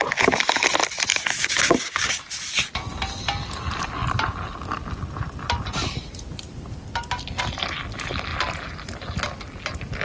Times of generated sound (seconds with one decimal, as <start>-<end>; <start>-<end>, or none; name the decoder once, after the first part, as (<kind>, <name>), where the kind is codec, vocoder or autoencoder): 1.1-2.2 (codec, DAC)